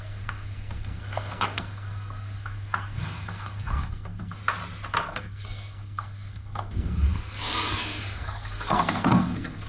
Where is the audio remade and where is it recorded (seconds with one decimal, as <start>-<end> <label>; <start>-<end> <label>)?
0.0-4.4 remade; 4.4-5.1 recorded; 5.1-9.7 remade